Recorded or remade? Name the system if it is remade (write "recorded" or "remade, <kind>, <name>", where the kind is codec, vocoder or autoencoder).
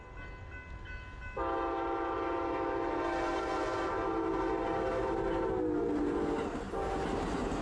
recorded